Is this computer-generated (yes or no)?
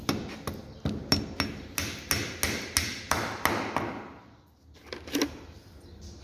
no